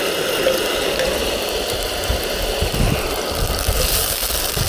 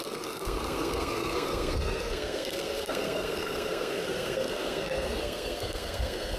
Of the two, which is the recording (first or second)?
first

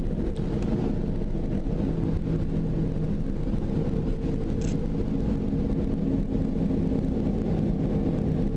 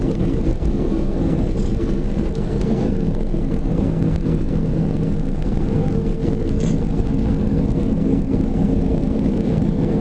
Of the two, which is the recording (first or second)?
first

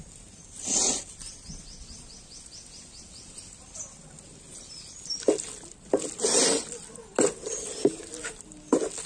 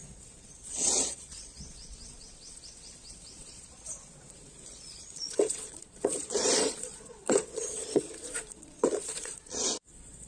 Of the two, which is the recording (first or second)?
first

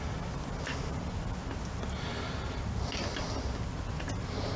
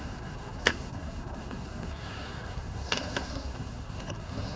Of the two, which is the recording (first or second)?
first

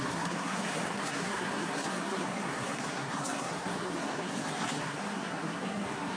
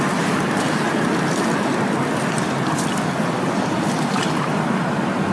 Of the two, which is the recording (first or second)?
second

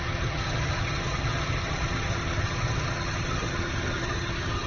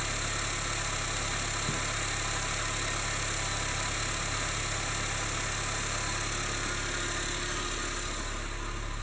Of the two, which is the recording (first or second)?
second